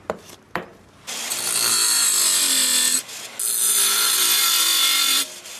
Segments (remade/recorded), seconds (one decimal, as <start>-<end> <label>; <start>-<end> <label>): 0.0-3.6 recorded; 3.6-5.6 remade